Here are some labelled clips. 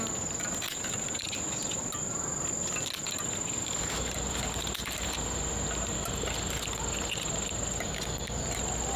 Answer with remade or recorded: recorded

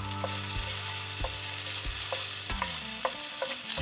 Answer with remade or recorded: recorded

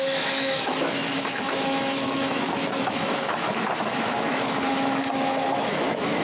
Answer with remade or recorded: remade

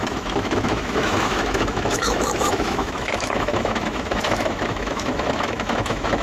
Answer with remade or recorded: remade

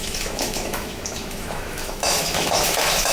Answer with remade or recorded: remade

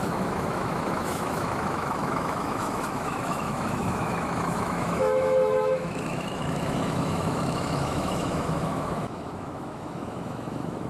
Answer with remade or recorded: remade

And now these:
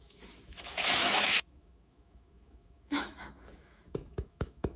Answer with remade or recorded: remade